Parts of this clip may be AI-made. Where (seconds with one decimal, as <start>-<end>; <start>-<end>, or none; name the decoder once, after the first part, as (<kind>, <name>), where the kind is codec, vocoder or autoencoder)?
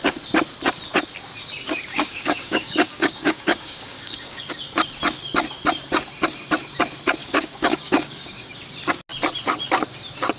1.9-4.5 (codec, DAC); 7.2-8.5